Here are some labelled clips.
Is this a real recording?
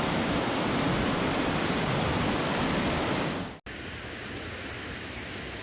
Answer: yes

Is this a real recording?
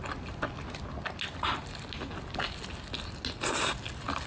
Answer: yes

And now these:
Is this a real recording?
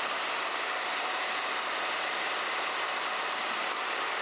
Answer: yes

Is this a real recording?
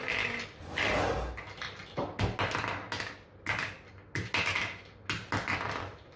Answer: yes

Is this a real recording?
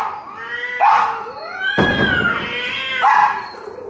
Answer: yes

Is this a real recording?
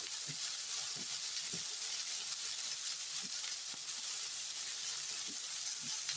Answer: yes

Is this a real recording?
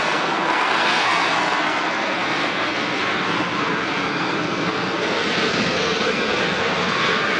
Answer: no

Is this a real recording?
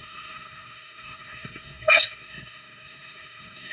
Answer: no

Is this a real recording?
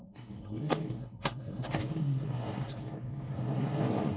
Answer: no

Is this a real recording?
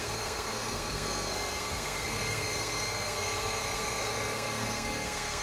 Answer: no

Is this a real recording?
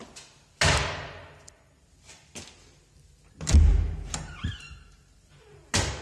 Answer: yes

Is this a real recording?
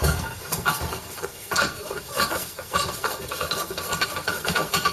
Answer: no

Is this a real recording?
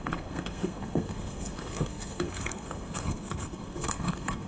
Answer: no